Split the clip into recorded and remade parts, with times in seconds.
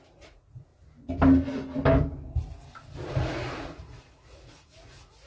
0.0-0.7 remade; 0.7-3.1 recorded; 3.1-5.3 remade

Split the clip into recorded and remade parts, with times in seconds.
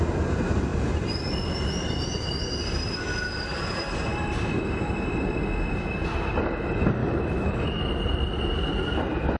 0.0-7.0 recorded; 7.0-7.8 remade; 7.8-9.4 recorded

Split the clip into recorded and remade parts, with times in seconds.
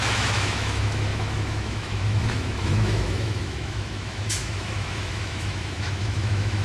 0.0-6.6 remade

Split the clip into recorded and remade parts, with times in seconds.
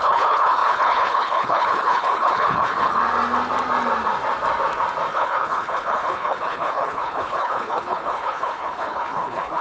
0.0-3.0 remade; 3.0-5.1 recorded; 5.1-9.6 remade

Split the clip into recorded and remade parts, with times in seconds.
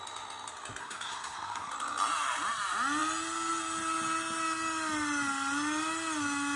0.0-0.8 recorded; 0.8-1.7 remade; 1.7-6.6 recorded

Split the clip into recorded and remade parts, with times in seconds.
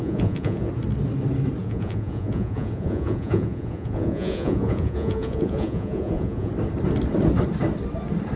0.0-0.7 remade; 0.7-1.6 recorded; 1.6-6.5 remade; 6.5-8.4 recorded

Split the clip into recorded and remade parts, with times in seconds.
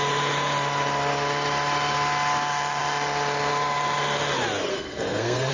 0.0-4.7 recorded; 4.7-5.5 remade